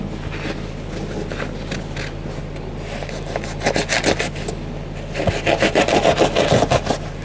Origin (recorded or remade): recorded